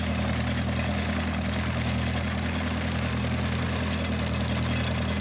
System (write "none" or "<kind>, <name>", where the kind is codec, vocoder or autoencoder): none